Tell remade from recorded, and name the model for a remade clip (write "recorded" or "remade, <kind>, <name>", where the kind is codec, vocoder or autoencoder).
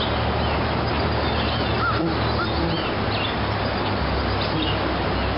recorded